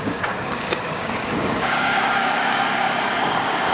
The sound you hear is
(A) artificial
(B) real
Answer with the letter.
A